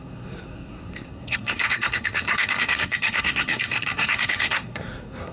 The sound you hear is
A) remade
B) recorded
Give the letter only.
A